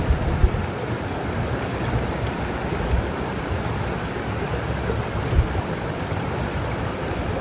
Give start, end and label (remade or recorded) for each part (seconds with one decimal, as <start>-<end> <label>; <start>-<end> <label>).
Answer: 0.0-7.4 recorded